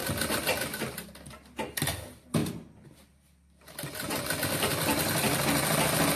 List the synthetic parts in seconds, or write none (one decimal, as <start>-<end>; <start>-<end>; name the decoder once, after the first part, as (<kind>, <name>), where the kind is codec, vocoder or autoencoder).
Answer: none